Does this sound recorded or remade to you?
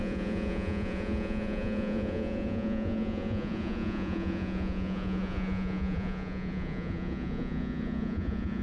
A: remade